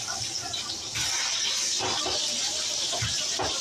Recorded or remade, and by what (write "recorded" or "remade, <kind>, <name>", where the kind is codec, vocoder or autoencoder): recorded